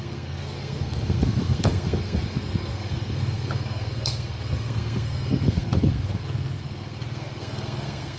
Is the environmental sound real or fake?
fake